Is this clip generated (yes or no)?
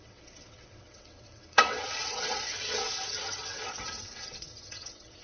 yes